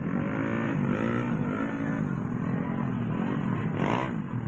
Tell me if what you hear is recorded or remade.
recorded